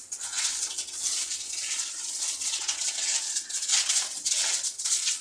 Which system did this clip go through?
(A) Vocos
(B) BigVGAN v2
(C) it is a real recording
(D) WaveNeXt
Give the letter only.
D